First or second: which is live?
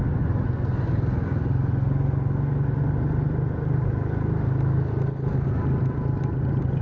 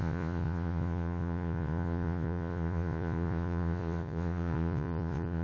first